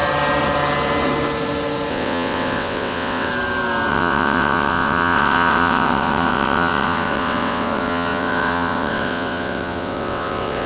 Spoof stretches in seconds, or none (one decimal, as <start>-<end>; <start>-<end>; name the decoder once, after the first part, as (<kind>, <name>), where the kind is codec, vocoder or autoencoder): 1.9-3.3 (vocoder, WaveNeXt); 3.9-10.7